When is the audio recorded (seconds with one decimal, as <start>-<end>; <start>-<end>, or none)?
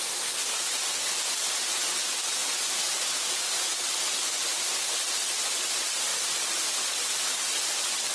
0.0-8.1